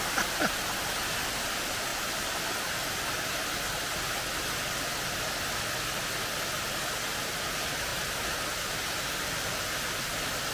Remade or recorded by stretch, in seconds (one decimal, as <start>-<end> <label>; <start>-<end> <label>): 0.0-7.9 recorded; 7.9-9.1 remade; 9.1-10.5 recorded